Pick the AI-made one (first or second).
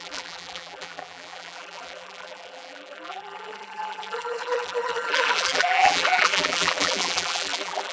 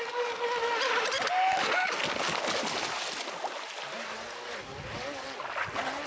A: first